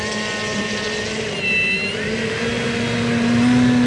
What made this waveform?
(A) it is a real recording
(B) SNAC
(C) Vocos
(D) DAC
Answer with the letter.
A